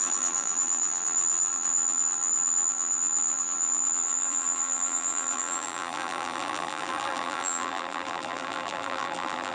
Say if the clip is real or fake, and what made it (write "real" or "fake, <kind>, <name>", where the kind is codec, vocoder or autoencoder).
fake, vocoder, BigVGAN v2